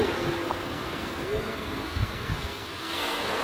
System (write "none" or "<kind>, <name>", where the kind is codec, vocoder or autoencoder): codec, SNAC